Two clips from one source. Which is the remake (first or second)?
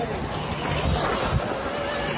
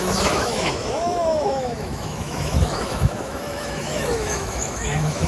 second